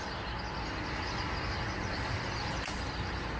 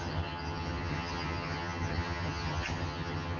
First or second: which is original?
first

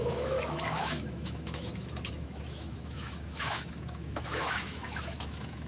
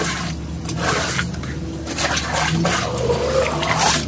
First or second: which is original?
second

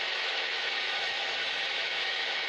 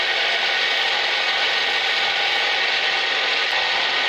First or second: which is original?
second